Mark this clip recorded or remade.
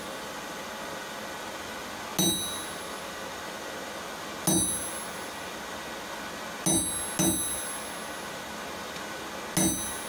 recorded